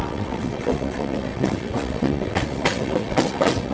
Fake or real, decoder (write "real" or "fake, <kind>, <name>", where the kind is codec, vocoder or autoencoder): fake, vocoder, WaveNeXt